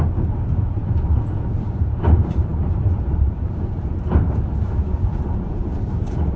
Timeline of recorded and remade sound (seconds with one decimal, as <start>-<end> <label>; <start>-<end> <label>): 0.0-6.4 remade